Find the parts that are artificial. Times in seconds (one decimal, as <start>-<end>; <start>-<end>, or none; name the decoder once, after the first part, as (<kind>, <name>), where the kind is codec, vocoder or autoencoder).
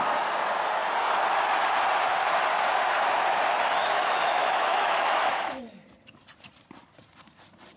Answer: 3.8-5.6 (autoencoder, DAC-VAE)